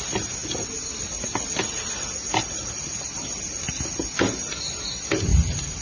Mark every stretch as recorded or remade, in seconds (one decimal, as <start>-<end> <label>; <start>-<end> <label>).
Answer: 0.0-5.8 recorded